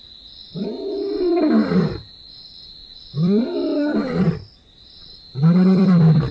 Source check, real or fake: fake